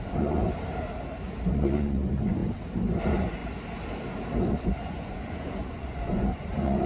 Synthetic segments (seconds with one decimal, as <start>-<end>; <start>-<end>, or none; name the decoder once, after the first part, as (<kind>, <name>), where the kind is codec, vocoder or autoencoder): 0.0-0.4 (vocoder, Vocos); 1.5-2.4; 3.0-3.4; 4.5-6.9